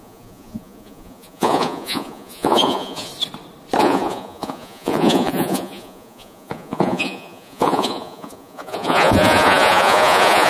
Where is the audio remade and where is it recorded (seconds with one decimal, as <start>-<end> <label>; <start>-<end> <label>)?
0.0-3.1 remade; 3.1-3.8 recorded; 3.8-10.5 remade